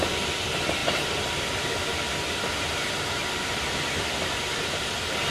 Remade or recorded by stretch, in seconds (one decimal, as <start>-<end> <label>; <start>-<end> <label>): 0.0-0.8 recorded; 0.8-3.9 remade; 3.9-5.3 recorded